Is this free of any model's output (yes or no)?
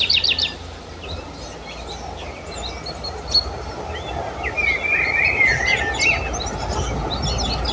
yes